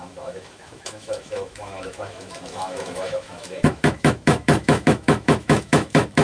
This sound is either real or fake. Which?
fake